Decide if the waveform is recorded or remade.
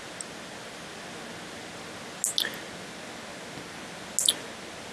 recorded